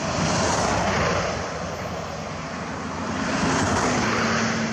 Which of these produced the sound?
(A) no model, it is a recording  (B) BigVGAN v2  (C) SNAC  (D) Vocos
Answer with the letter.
A